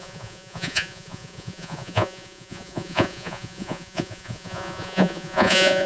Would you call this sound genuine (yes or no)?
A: no